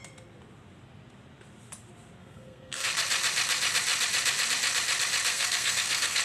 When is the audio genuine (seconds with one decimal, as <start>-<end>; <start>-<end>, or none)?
0.0-2.2; 2.9-5.3

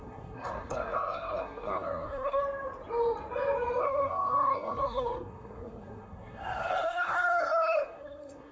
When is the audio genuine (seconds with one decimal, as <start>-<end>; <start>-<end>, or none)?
2.4-3.8

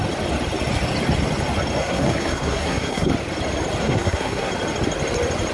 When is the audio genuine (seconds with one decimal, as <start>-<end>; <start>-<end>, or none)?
0.0-1.8; 3.1-3.8; 4.5-5.5